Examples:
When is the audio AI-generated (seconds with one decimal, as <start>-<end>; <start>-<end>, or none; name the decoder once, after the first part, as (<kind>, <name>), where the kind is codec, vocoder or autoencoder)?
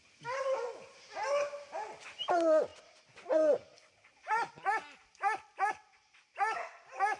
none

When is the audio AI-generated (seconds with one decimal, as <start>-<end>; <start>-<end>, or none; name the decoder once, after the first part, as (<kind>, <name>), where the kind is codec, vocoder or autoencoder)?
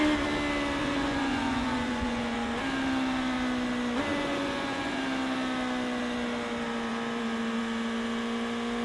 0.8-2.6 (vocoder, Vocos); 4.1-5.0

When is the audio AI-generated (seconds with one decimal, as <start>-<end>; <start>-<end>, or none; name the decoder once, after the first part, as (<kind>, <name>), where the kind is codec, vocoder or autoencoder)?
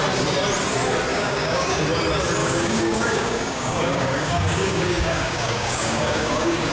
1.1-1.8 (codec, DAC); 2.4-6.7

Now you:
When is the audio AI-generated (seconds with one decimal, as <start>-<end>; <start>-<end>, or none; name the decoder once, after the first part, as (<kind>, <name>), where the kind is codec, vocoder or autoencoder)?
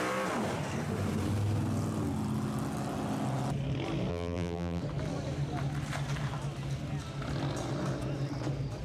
4.1-4.8 (vocoder, BigVGAN v2)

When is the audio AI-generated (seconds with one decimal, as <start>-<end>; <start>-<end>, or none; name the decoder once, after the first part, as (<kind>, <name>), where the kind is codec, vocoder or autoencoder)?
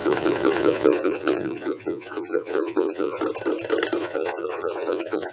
0.0-3.2 (vocoder, Vocos); 4.0-5.3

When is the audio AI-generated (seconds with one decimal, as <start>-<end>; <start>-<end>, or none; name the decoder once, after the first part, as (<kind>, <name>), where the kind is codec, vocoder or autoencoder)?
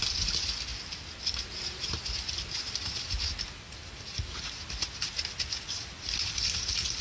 none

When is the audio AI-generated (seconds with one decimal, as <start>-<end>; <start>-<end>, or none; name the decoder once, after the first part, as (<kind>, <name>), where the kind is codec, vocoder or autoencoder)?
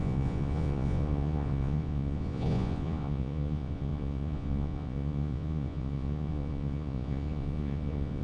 0.0-8.2 (vocoder, Vocos)